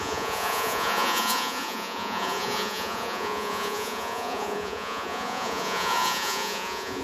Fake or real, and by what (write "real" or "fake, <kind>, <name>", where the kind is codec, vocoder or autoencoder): fake, vocoder, Vocos